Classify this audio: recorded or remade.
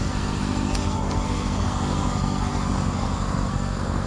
remade